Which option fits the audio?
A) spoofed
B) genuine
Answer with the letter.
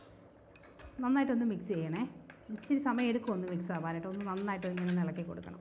B